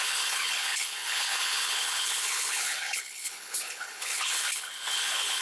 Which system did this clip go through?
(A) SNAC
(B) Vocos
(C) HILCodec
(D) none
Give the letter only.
C